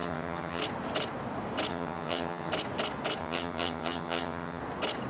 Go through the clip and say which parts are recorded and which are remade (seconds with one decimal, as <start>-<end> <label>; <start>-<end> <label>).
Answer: 0.0-0.6 remade; 0.6-1.7 recorded; 1.7-2.5 remade; 2.5-3.2 recorded; 3.2-4.6 remade; 4.6-5.1 recorded